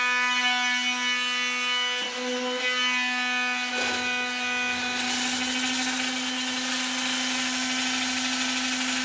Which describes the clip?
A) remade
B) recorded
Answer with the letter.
B